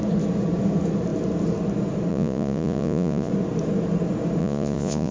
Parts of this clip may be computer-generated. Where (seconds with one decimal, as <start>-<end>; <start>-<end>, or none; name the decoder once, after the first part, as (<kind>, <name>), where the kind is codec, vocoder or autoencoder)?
2.1-3.3 (vocoder, Vocos); 4.4-5.1